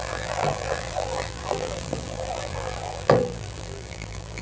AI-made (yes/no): yes